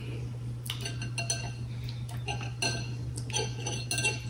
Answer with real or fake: real